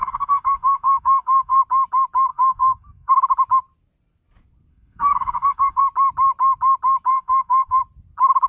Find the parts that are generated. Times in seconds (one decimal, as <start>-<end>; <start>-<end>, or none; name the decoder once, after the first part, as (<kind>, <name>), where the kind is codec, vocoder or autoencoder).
0.0-1.6 (codec, SNAC); 2.3-3.1; 4.7-5.8; 7.1-7.8